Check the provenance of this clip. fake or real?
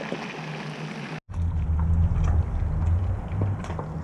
real